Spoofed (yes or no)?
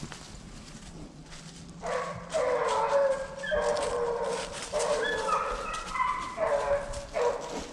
no